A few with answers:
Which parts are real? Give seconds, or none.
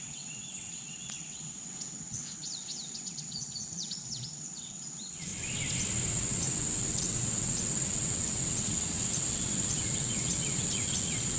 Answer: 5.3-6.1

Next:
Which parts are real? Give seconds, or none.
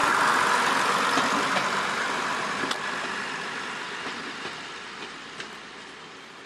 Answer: 0.0-6.5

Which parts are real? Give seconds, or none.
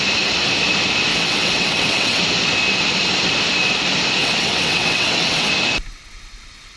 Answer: 0.0-1.1; 2.2-4.2; 5.5-6.8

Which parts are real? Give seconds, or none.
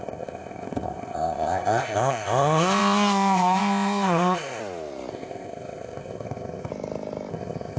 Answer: 4.6-5.1; 6.7-7.3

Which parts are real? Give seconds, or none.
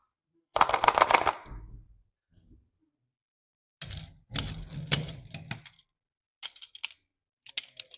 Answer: 0.7-8.0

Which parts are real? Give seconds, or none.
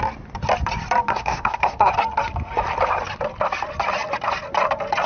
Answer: 0.0-1.1; 1.9-5.1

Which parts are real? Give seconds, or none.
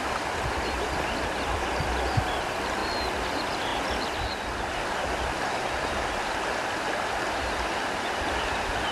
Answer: 0.0-8.9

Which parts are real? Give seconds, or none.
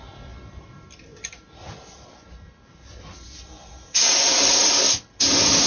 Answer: 0.0-5.7